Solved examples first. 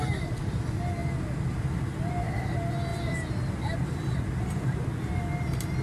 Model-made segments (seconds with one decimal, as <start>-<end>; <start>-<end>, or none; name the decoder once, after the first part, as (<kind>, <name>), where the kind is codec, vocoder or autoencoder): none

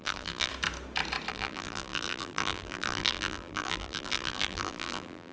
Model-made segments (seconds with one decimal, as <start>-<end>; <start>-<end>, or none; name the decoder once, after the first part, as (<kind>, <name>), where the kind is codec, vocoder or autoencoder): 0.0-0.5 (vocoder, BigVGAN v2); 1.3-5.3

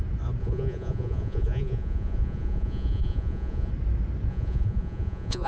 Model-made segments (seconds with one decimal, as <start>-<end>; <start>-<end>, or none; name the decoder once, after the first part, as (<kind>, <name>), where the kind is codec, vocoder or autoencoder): 0.4-3.7 (vocoder, Vocos); 4.3-5.5

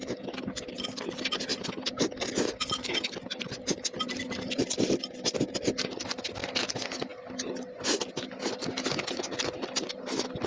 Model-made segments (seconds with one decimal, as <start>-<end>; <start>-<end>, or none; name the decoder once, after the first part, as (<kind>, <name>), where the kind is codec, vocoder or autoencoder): none